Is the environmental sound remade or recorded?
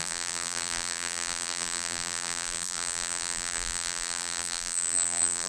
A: remade